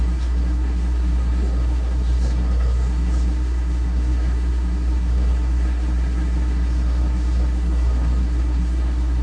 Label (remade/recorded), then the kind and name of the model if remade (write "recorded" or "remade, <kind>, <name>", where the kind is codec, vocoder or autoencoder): remade, codec, SNAC